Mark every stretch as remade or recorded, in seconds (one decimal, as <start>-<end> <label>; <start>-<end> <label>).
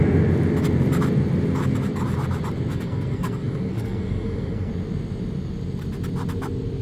0.0-2.7 recorded; 2.7-4.7 remade; 4.7-6.8 recorded